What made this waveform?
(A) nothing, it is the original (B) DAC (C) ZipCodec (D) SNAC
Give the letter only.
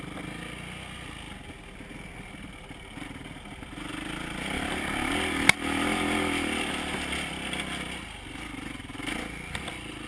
A